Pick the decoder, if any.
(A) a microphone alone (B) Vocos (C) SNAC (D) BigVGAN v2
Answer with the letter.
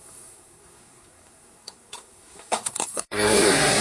C